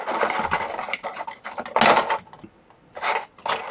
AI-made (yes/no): no